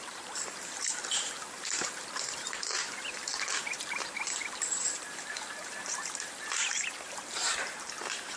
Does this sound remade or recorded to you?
remade